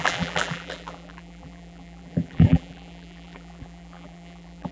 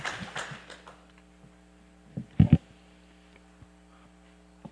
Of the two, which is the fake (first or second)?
first